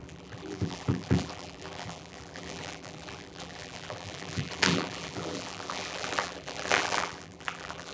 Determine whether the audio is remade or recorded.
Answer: remade